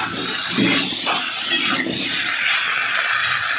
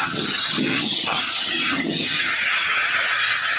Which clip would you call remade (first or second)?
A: second